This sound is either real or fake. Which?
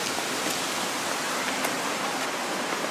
real